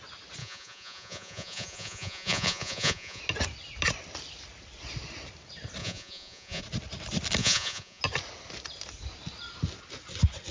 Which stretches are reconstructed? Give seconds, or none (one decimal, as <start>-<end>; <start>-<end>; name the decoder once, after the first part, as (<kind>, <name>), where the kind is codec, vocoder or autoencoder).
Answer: 0.4-3.2 (vocoder, Vocos); 5.8-6.6; 7.4-8.0